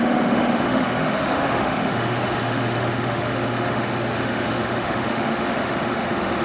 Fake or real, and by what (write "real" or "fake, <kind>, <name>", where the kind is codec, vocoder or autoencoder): fake, autoencoder, DAC-VAE